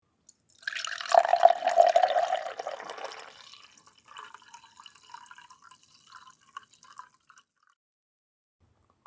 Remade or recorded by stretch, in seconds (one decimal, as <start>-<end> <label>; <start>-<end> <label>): 0.0-9.1 recorded